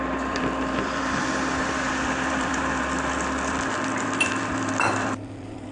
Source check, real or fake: fake